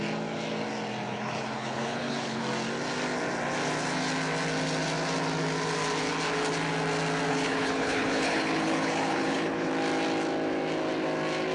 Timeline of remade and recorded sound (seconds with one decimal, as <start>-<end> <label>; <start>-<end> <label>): 0.0-1.1 recorded; 1.1-2.4 remade; 2.4-7.3 recorded; 7.3-9.7 remade; 9.7-11.5 recorded